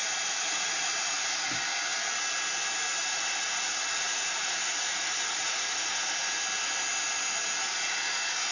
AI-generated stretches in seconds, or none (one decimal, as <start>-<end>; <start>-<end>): 0.0-0.9; 3.0-6.1